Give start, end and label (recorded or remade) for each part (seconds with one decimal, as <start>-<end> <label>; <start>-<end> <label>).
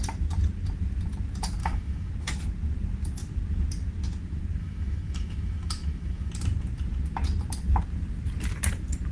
0.0-1.6 recorded; 1.6-2.1 remade; 2.1-4.6 recorded; 4.6-6.3 remade; 6.3-9.1 recorded